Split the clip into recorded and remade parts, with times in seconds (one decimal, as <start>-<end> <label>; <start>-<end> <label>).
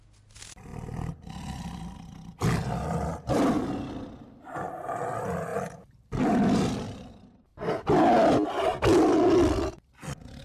0.0-2.1 recorded; 2.1-3.7 remade; 3.7-5.5 recorded; 5.5-6.7 remade; 6.7-7.5 recorded; 7.5-9.9 remade; 9.9-10.4 recorded